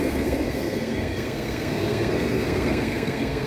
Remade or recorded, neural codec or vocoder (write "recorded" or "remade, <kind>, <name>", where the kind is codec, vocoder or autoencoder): remade, codec, SNAC